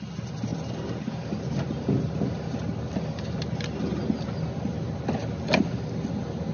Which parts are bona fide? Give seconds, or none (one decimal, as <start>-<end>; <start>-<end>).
0.0-6.5